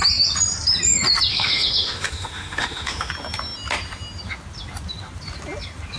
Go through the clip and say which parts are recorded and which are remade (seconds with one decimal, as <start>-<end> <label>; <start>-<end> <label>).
0.0-1.3 recorded; 1.3-3.1 remade; 3.1-6.0 recorded